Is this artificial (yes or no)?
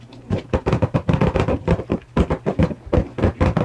no